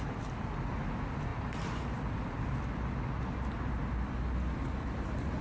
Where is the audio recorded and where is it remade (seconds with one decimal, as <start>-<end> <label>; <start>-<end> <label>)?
0.0-5.4 recorded